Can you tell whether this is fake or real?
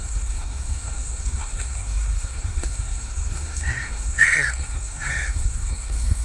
fake